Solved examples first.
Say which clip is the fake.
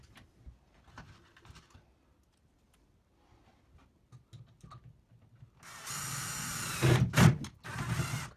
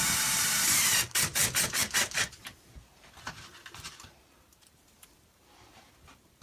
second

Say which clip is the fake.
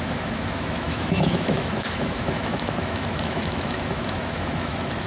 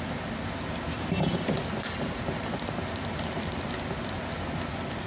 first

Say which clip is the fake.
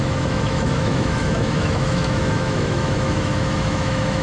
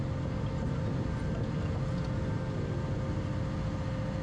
first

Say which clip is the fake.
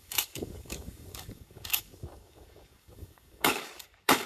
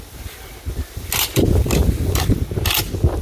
first